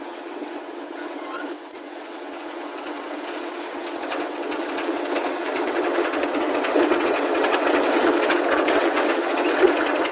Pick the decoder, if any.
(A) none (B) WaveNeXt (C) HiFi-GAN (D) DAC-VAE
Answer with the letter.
B